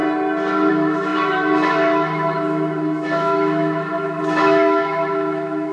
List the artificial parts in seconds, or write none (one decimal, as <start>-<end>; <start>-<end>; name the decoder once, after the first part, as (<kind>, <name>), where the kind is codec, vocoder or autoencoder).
0.7-5.7 (autoencoder, DAC-VAE)